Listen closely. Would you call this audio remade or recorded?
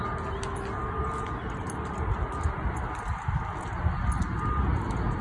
recorded